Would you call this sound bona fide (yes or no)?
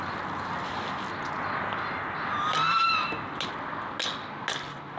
yes